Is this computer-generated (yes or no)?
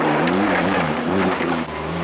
yes